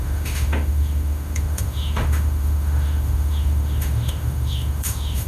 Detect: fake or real fake